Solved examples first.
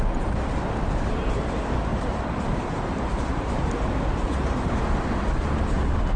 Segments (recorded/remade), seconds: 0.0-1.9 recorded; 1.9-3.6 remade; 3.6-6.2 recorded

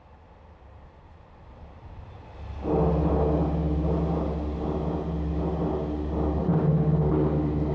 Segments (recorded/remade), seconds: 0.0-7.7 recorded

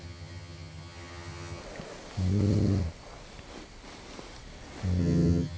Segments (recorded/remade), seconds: 0.0-1.6 remade; 1.6-5.0 recorded; 5.0-5.6 remade